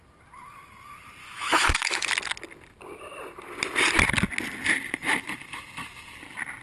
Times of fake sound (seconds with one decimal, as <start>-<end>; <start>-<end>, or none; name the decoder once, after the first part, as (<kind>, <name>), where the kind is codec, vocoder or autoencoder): 1.2-2.1 (autoencoder, DAC-VAE)